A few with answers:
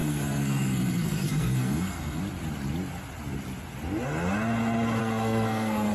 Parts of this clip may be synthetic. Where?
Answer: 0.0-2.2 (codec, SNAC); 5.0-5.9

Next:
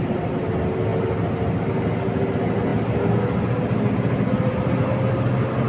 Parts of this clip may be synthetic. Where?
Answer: none

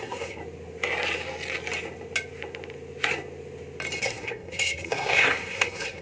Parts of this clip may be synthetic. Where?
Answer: 0.0-0.4 (codec, SNAC); 4.0-6.0